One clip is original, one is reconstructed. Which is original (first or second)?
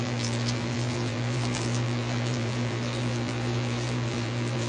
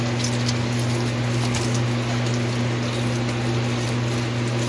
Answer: second